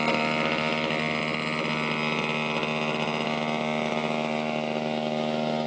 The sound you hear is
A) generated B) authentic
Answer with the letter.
B